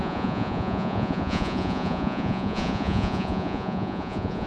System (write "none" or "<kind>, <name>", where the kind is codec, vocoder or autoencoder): vocoder, Vocos